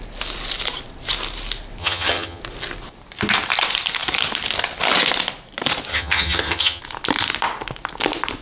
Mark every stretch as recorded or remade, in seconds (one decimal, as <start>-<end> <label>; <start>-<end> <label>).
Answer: 0.0-1.8 recorded; 1.8-2.4 remade; 2.4-5.9 recorded; 5.9-6.8 remade; 6.8-8.4 recorded